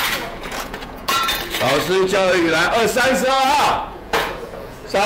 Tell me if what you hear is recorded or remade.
remade